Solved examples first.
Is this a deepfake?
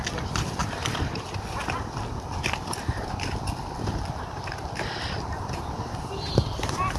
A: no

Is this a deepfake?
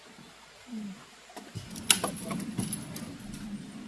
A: no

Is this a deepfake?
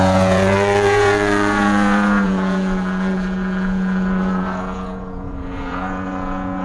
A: yes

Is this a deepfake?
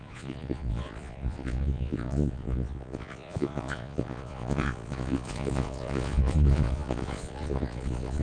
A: yes